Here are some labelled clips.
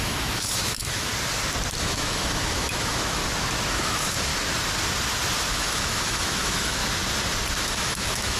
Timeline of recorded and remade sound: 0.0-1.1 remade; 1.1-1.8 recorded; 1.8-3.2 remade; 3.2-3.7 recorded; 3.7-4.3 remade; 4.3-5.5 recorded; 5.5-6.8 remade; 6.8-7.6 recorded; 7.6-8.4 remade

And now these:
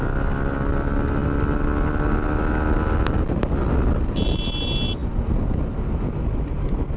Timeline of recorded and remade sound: 0.0-7.0 recorded